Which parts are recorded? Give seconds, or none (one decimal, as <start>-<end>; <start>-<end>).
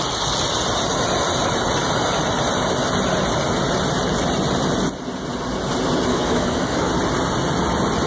0.0-6.1; 6.9-8.1